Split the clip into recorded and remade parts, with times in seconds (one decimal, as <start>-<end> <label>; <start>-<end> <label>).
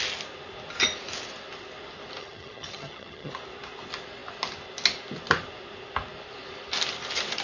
0.0-2.2 recorded; 2.2-3.3 remade; 3.3-7.4 recorded